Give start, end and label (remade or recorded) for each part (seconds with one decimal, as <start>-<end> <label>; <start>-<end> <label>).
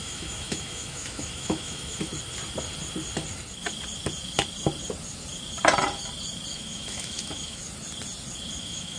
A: 0.0-2.1 remade; 2.1-6.5 recorded; 6.5-7.6 remade; 7.6-8.6 recorded; 8.6-9.0 remade